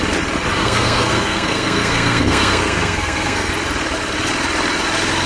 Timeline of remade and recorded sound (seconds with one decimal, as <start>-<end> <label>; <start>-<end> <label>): 0.0-0.6 recorded; 0.6-3.5 remade; 3.5-5.3 recorded